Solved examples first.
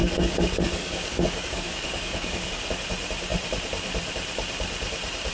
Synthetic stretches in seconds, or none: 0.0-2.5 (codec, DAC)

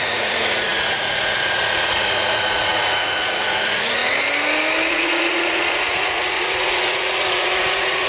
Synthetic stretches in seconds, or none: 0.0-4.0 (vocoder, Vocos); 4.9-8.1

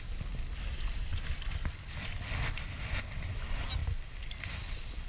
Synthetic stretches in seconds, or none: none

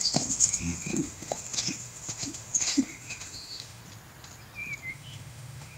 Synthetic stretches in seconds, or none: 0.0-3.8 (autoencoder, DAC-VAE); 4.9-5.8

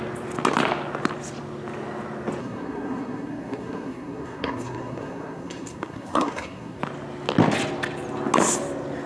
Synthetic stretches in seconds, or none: 2.4-6.8 (codec, SNAC)

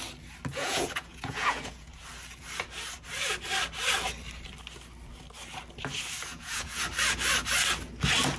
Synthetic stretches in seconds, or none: 0.5-1.9 (vocoder, Vocos); 6.3-6.8

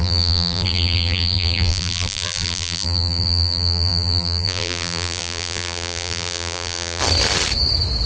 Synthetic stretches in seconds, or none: 0.0-7.0 (vocoder, BigVGAN v2)

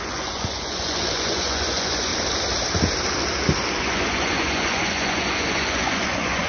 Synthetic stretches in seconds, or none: 0.0-2.1 (vocoder, Vocos); 3.8-6.5